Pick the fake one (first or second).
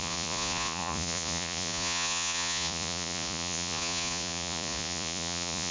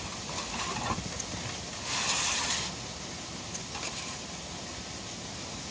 first